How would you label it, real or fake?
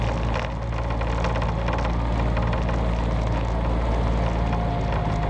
real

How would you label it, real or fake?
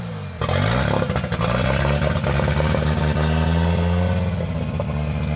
real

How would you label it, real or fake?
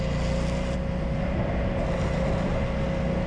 real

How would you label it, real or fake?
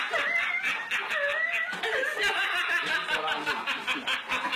real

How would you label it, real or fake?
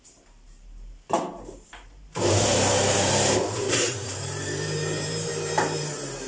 fake